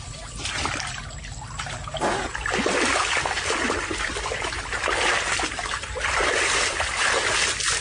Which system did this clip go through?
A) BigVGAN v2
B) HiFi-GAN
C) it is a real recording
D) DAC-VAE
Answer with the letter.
C